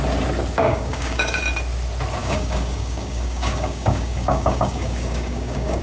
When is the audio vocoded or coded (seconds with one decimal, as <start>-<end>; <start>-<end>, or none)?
0.6-1.4; 2.2-5.8